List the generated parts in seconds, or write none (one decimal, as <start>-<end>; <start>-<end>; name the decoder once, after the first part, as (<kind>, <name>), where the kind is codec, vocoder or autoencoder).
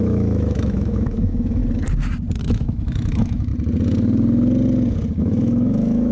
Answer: 0.0-1.6 (autoencoder, DAC-VAE); 2.4-3.5; 5.2-6.1